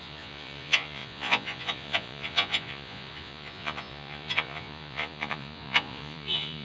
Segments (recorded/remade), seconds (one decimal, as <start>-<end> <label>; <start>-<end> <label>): 0.0-6.6 remade

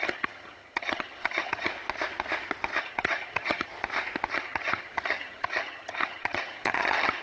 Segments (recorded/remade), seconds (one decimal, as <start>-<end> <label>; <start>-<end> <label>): 0.0-1.7 remade; 1.7-2.8 recorded; 2.8-3.7 remade; 3.7-4.3 recorded; 4.3-7.2 remade

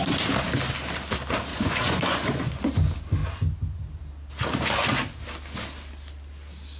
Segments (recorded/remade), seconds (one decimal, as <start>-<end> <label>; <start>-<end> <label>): 0.0-1.5 recorded; 1.5-2.6 remade; 2.6-6.8 recorded

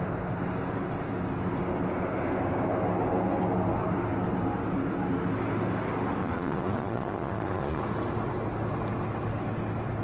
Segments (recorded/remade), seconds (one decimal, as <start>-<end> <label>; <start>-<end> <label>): 0.0-6.2 recorded; 6.2-7.8 remade; 7.8-10.0 recorded

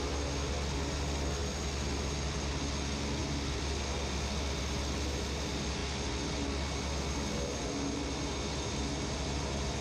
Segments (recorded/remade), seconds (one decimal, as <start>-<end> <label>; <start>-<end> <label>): 0.0-9.8 recorded

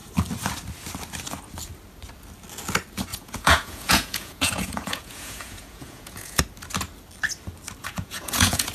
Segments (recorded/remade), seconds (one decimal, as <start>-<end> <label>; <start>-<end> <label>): 0.0-3.1 recorded; 3.1-6.4 remade; 6.4-7.8 recorded; 7.8-8.7 remade

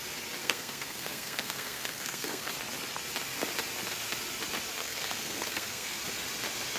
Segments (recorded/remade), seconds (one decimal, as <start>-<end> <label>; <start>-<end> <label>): 0.0-0.4 recorded; 0.4-2.5 remade; 2.5-4.8 recorded; 4.8-6.0 remade; 6.0-6.8 recorded